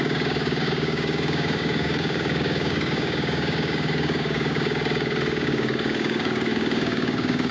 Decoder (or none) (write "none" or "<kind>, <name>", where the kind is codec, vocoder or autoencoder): codec, DAC